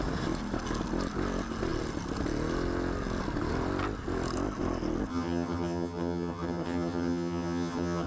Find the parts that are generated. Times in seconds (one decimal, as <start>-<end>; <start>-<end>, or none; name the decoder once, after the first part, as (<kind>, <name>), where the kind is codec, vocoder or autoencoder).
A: 5.1-8.1 (vocoder, HiFi-GAN)